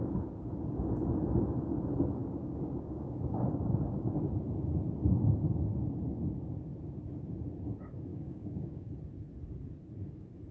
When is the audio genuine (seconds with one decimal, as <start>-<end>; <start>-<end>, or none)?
0.0-2.2; 4.2-8.1; 8.9-10.5